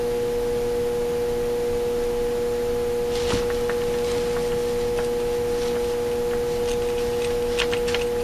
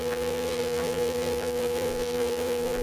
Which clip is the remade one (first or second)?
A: second